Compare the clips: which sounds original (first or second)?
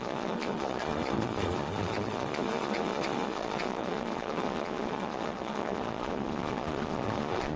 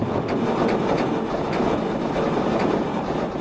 second